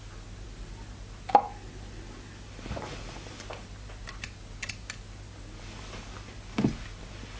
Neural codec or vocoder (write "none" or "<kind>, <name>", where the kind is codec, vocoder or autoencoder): none